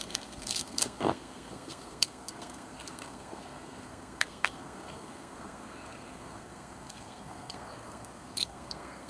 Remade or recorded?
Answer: remade